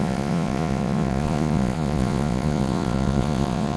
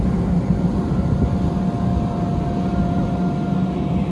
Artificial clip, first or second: first